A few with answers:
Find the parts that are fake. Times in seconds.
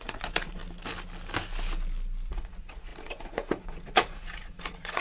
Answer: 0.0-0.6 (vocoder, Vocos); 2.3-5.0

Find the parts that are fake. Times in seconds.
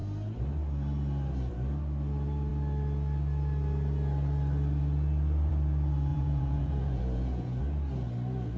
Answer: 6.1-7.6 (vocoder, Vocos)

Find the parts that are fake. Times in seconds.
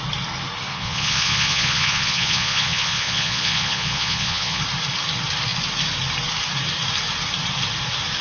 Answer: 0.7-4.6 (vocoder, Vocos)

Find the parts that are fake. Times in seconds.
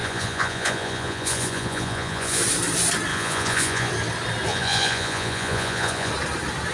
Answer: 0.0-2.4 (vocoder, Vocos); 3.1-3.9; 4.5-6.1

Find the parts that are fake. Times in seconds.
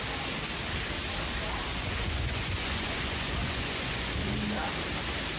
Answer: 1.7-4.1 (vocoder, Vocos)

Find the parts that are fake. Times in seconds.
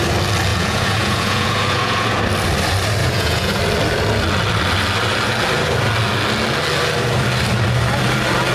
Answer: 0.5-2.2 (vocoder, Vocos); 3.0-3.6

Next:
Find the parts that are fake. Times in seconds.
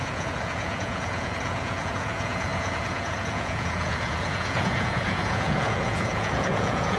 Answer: 0.0-7.0 (vocoder, Vocos)